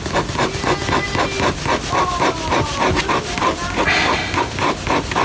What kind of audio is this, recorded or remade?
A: recorded